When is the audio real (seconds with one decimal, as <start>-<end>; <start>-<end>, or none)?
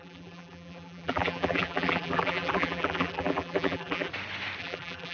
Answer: 4.1-4.6